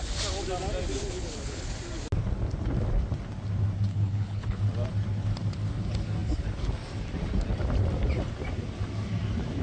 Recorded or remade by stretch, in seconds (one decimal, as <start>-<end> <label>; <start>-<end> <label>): 0.0-1.0 recorded; 1.0-1.6 remade; 1.6-3.9 recorded; 3.9-4.6 remade; 4.6-9.6 recorded